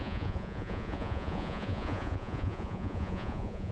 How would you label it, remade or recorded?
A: remade